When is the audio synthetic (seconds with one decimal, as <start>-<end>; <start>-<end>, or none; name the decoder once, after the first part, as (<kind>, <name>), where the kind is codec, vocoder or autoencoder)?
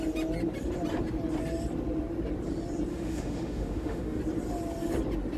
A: 2.9-4.2 (autoencoder, DAC-VAE)